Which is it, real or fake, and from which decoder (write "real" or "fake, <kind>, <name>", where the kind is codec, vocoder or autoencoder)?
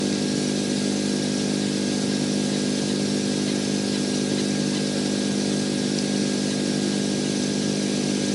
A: real